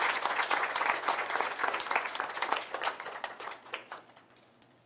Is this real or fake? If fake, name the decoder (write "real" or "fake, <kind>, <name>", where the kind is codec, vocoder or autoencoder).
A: fake, vocoder, Vocos